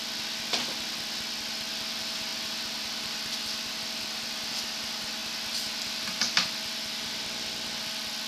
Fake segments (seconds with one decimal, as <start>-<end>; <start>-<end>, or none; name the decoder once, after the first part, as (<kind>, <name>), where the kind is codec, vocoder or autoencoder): none